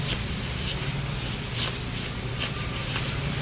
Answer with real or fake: real